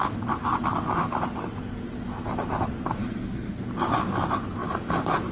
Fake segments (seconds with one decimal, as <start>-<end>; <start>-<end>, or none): 3.0-3.6